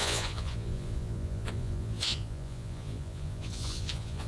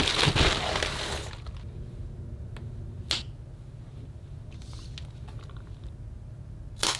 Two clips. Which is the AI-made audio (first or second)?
first